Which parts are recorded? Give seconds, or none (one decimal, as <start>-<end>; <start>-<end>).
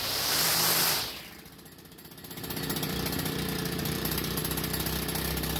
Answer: 0.5-3.8; 4.4-5.6